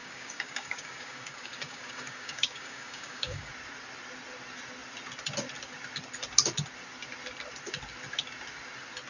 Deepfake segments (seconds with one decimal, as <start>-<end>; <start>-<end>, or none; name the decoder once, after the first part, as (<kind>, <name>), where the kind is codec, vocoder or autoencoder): 0.0-3.5 (codec, DAC)